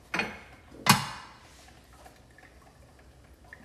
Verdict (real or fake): real